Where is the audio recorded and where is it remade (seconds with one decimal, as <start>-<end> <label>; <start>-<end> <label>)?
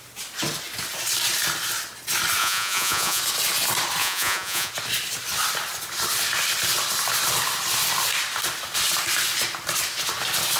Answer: 0.0-2.4 recorded; 2.4-3.2 remade; 3.2-4.0 recorded; 4.0-4.7 remade; 4.7-10.6 recorded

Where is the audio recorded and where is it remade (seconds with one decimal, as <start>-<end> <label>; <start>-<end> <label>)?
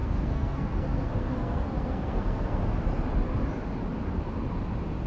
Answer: 0.0-2.6 remade; 2.6-5.1 recorded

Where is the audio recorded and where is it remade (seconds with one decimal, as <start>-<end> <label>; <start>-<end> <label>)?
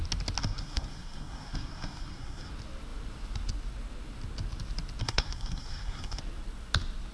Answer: 0.0-0.4 recorded; 0.4-2.5 remade; 2.5-5.0 recorded; 5.0-6.2 remade; 6.2-7.1 recorded